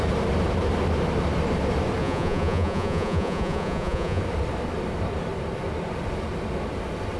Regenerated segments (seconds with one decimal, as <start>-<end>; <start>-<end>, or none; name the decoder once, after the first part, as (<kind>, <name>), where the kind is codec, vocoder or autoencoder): 2.0-4.2 (vocoder, Vocos)